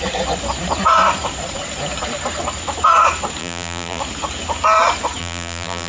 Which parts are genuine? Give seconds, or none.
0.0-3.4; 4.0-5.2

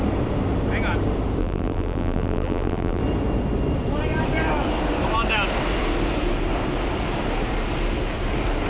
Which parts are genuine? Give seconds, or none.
0.0-1.4; 3.0-8.7

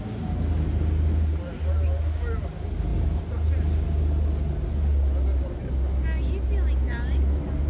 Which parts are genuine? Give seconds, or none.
0.0-7.7

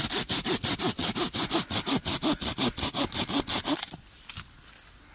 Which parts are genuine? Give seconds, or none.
0.0-5.1

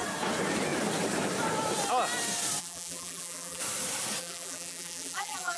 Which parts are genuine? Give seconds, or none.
0.0-2.6; 3.6-4.2

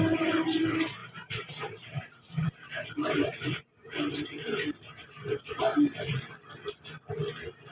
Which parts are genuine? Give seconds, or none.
0.0-1.0; 5.6-7.7